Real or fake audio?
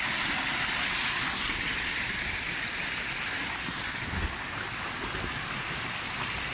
real